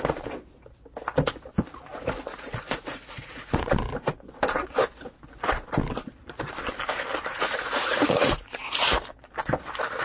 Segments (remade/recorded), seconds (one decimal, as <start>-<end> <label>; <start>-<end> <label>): 0.0-1.9 recorded; 1.9-3.7 remade; 3.7-7.3 recorded; 7.3-9.0 remade; 9.0-10.0 recorded